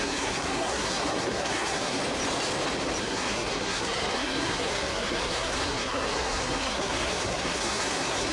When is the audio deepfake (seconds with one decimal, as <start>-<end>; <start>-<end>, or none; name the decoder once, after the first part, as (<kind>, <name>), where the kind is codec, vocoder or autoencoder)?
0.0-2.0 (codec, SNAC); 3.0-8.3